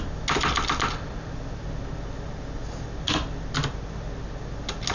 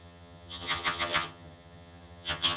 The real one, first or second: first